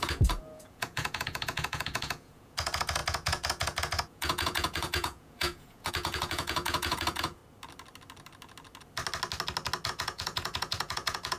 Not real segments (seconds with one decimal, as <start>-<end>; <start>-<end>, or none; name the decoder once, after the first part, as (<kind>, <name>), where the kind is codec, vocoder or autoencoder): 0.0-7.4 (vocoder, Vocos); 9.9-11.4